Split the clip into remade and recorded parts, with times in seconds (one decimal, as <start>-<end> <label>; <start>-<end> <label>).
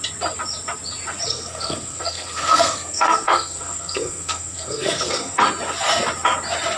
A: 0.0-1.3 recorded; 1.3-5.4 remade; 5.4-6.8 recorded